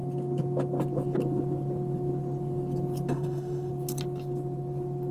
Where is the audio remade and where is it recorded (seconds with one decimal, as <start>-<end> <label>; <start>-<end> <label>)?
0.0-3.1 recorded; 3.1-3.7 remade; 3.7-5.1 recorded